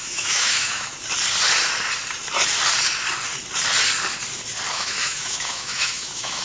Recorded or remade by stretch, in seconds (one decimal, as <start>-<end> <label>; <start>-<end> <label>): 0.0-0.9 remade; 0.9-4.7 recorded; 4.7-6.4 remade